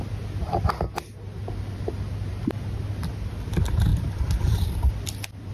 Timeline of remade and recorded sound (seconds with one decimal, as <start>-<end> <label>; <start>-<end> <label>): 0.0-1.4 recorded; 1.4-2.4 remade; 2.4-3.9 recorded; 3.9-4.9 remade; 4.9-5.5 recorded

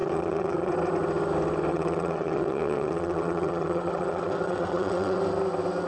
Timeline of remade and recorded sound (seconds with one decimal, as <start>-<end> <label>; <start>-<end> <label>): 0.0-0.7 remade; 0.7-1.7 recorded; 1.7-5.2 remade; 5.2-5.9 recorded

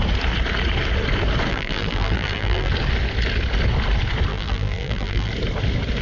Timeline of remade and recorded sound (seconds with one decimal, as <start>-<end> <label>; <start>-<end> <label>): 0.0-1.5 recorded; 1.5-2.7 remade; 2.7-4.3 recorded; 4.3-5.3 remade; 5.3-6.0 recorded

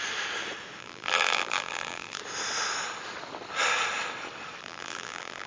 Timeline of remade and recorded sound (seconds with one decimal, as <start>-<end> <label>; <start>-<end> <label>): 0.0-0.8 recorded; 0.8-2.2 remade; 2.2-4.6 recorded; 4.6-5.5 remade

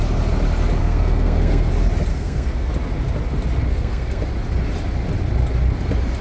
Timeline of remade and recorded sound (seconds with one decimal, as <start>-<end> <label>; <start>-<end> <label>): 0.0-0.8 recorded; 0.8-1.7 remade; 1.7-2.1 recorded; 2.1-2.7 remade; 2.7-3.6 recorded; 3.6-4.2 remade; 4.2-6.2 recorded

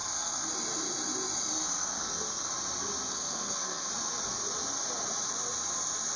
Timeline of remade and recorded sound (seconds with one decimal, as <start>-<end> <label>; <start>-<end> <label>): 0.0-0.5 remade; 0.5-1.6 recorded; 1.6-2.5 remade; 2.5-3.1 recorded; 3.1-3.9 remade; 3.9-6.2 recorded

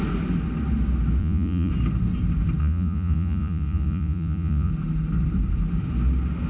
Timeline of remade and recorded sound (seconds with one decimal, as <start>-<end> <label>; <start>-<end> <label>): 0.0-1.2 recorded; 1.2-1.7 remade; 1.7-2.6 recorded; 2.6-4.7 remade; 4.7-6.5 recorded

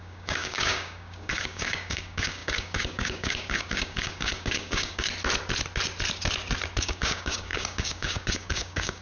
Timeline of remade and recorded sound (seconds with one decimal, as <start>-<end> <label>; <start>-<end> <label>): 0.0-5.1 remade; 5.1-6.8 recorded; 6.8-9.0 remade